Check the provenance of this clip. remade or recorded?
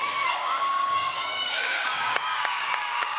remade